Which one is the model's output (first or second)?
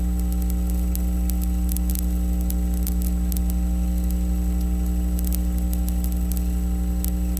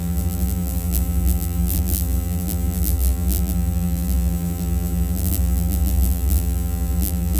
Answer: second